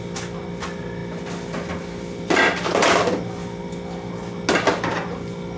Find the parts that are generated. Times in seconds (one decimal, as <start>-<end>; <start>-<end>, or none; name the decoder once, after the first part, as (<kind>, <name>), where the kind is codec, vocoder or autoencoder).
none